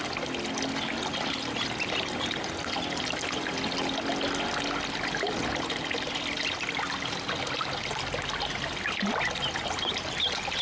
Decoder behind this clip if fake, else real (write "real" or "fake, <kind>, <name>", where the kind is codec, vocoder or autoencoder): real